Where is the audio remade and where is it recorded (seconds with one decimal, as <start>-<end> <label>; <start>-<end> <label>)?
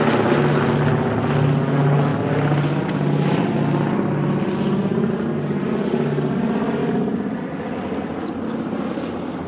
0.0-6.8 recorded; 6.8-7.5 remade; 7.5-9.5 recorded